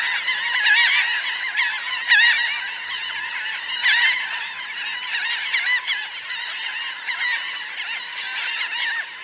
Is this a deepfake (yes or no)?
yes